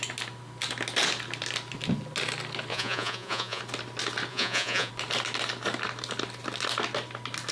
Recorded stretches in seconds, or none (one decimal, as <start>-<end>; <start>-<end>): 0.0-2.7; 3.6-4.3; 4.9-7.5